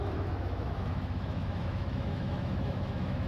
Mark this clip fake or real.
fake